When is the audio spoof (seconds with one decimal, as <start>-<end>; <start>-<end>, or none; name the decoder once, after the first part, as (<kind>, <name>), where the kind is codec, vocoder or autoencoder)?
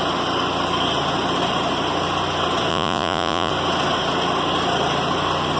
2.7-3.5 (vocoder, Vocos)